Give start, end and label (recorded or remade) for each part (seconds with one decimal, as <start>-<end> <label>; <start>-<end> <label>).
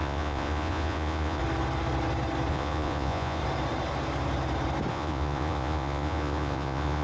0.0-1.4 remade; 1.4-2.5 recorded; 2.5-3.4 remade; 3.4-4.9 recorded; 4.9-7.0 remade